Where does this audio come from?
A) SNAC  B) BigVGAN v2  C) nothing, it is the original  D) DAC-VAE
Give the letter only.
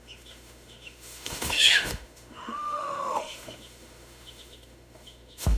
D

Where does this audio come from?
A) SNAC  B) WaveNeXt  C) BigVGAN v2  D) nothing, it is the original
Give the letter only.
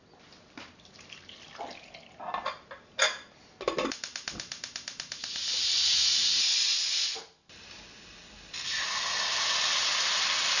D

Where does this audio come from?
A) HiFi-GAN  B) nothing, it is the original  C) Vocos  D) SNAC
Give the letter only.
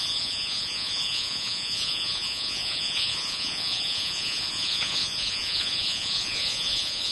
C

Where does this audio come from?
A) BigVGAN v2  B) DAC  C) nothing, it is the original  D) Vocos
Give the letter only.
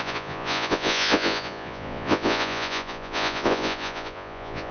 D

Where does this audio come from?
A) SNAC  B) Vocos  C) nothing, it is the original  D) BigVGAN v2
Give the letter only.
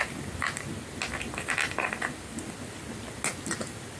C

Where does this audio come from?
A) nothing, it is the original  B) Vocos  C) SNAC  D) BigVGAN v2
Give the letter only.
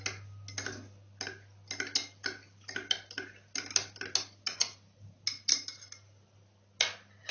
A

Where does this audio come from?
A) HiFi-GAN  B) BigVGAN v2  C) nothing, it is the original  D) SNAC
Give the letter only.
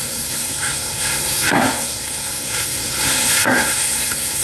D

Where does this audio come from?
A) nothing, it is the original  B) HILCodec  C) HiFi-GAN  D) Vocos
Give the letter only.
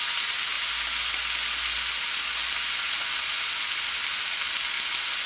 A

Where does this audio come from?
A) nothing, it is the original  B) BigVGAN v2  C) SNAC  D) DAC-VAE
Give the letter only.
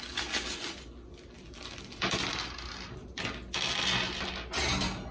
A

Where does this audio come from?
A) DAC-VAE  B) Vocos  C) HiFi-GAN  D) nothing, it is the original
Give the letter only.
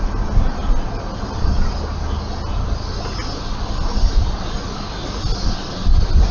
D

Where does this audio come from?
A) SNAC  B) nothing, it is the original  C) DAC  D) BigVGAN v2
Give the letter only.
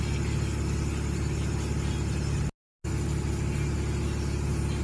B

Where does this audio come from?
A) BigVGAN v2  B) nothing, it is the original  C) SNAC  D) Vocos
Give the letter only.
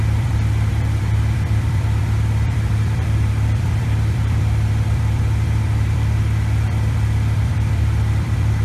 A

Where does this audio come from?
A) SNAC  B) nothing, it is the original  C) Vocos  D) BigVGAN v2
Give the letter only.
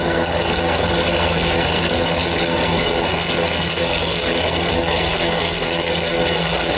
A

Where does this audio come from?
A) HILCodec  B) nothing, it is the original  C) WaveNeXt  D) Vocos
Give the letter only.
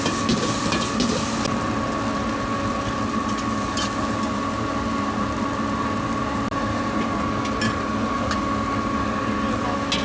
B